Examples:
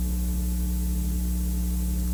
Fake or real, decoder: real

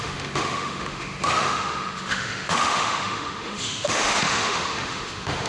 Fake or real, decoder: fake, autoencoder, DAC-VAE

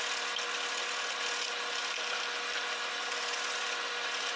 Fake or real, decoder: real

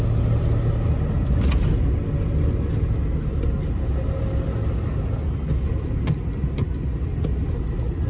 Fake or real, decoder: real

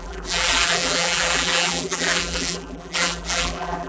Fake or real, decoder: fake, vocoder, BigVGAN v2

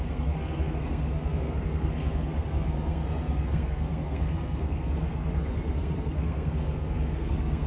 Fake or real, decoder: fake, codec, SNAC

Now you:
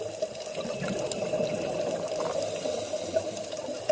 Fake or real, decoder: real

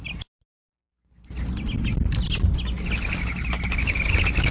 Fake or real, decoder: real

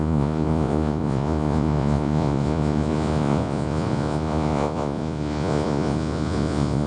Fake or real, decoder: fake, vocoder, Vocos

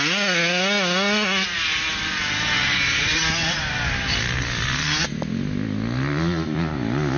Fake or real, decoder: real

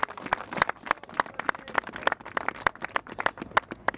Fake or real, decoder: real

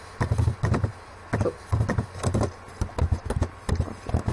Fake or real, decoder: real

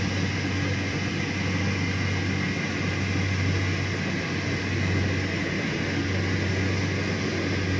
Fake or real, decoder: real